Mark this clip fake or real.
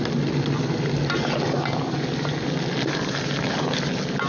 real